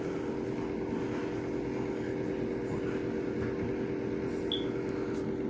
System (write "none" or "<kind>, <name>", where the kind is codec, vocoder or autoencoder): none